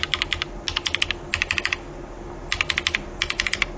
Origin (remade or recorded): recorded